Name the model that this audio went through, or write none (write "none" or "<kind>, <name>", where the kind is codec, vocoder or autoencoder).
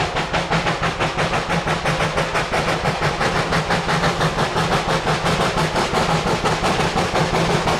none